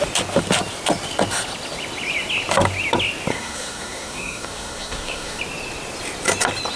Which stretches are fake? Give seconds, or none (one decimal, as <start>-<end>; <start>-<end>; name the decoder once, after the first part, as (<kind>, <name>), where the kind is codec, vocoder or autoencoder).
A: 3.3-5.4 (codec, SNAC)